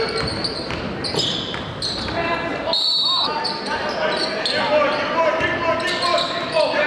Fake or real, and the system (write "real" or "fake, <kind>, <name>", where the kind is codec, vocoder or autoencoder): real